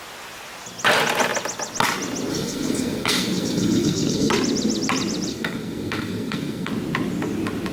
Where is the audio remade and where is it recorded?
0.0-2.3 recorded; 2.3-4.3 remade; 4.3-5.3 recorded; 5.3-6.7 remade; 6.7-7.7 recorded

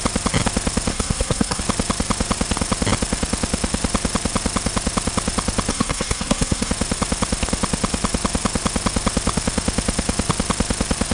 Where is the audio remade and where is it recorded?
0.0-0.9 recorded; 0.9-1.6 remade; 1.6-5.7 recorded; 5.7-6.7 remade; 6.7-11.1 recorded

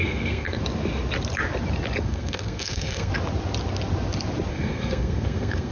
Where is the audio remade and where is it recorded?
0.0-0.6 remade; 0.6-2.0 recorded; 2.0-3.1 remade; 3.1-4.5 recorded; 4.5-5.7 remade

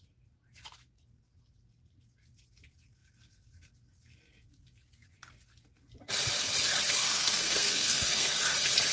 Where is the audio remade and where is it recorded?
0.0-7.0 recorded; 7.0-8.4 remade; 8.4-8.9 recorded

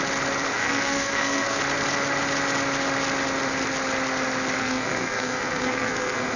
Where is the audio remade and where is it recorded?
0.0-0.5 recorded; 0.5-1.6 remade; 1.6-4.6 recorded; 4.6-6.4 remade